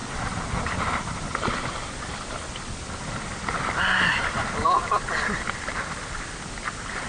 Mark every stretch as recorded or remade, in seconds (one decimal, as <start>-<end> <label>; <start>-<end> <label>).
0.0-7.1 recorded